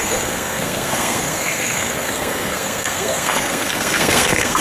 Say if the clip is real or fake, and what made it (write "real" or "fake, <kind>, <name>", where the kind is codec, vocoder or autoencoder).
fake, codec, SNAC